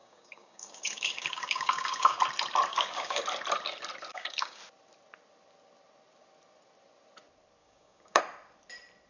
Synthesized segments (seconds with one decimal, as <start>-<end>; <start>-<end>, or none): 0.0-2.2; 2.7-3.2; 4.1-4.6; 7.6-8.2